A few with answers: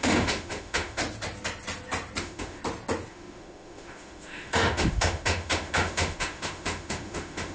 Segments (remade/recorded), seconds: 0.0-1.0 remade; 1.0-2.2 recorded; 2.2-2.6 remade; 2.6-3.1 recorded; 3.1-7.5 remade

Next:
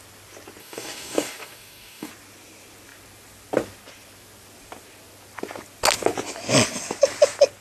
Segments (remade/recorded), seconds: 0.0-0.6 recorded; 0.6-2.1 remade; 2.1-7.6 recorded

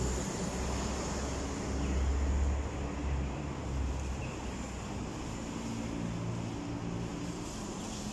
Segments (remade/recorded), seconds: 0.0-3.0 recorded; 3.0-4.2 remade; 4.2-7.1 recorded; 7.1-8.1 remade

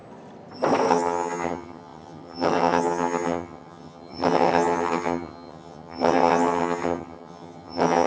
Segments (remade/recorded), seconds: 0.0-0.9 recorded; 0.9-8.1 remade

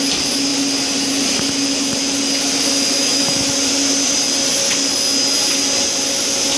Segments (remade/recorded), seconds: 0.0-3.0 recorded; 3.0-3.5 remade; 3.5-6.6 recorded

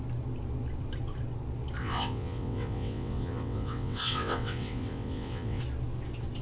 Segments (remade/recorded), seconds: 0.0-1.8 recorded; 1.8-5.6 remade; 5.6-6.4 recorded